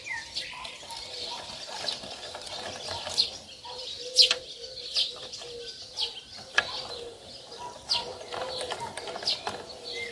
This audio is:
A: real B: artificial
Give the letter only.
A